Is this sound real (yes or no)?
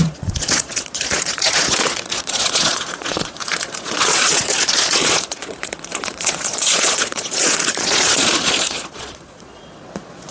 no